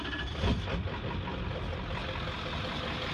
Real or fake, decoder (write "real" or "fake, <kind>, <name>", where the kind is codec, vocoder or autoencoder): real